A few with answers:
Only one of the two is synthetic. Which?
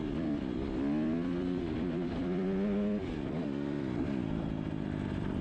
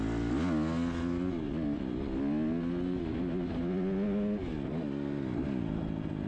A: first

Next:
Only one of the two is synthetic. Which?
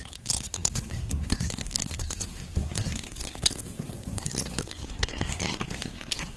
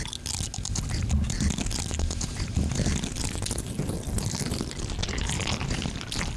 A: first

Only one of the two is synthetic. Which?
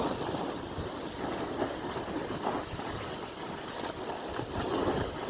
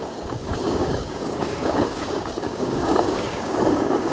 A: second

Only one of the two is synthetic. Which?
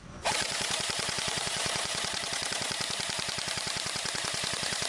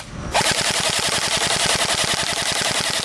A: first